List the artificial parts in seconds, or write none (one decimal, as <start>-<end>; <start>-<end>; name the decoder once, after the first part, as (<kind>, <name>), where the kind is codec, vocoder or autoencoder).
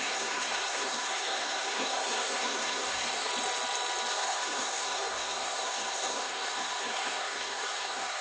0.0-3.3 (codec, SNAC); 4.1-8.2